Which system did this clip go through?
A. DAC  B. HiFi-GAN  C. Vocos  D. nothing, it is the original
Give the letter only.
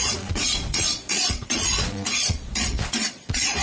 C